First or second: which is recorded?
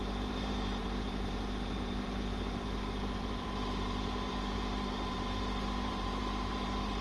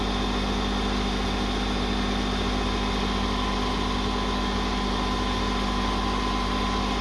second